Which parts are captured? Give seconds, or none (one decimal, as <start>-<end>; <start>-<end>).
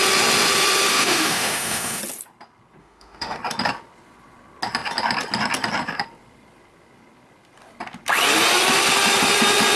0.0-0.9; 2.0-2.8; 3.4-9.8